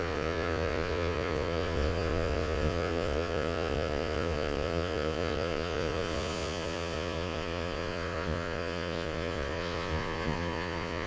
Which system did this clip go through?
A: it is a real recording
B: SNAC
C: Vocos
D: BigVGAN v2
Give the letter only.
C